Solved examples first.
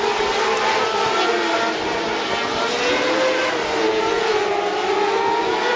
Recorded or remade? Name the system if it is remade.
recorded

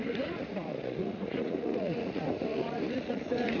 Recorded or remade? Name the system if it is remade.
remade, vocoder, Vocos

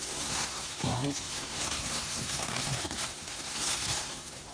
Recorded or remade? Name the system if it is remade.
remade, codec, SNAC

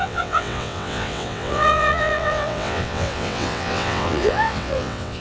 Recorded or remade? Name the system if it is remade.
remade, vocoder, WaveNeXt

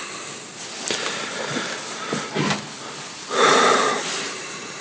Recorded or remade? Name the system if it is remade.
recorded